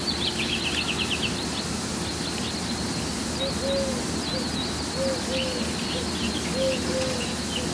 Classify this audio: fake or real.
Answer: real